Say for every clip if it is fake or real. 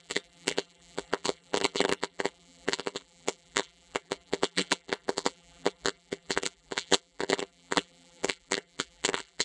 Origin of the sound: fake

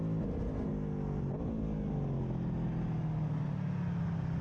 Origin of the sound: real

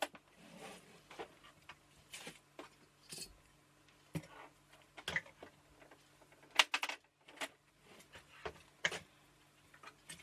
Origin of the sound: real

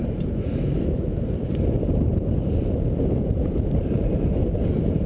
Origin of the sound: fake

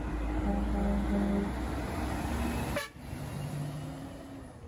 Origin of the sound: real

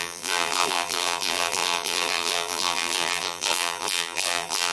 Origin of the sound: fake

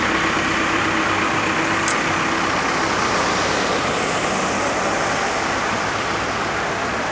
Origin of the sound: fake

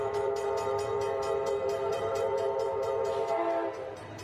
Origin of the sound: fake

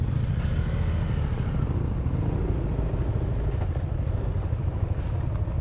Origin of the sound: real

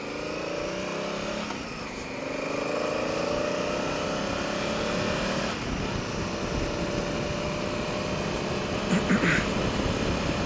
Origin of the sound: real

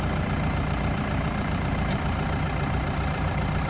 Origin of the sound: fake